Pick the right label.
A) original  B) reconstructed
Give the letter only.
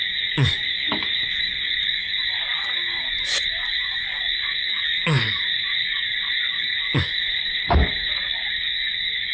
B